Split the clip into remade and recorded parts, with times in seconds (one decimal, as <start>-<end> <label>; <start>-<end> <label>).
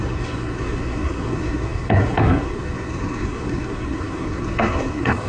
0.0-5.3 remade